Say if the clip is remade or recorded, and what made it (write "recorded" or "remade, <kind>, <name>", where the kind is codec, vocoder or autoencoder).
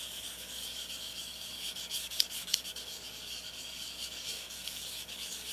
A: remade, codec, DAC